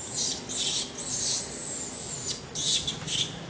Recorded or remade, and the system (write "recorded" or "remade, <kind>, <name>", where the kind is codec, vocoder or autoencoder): recorded